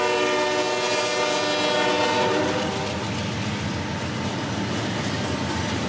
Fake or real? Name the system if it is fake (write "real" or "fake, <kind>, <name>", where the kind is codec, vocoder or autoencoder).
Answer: real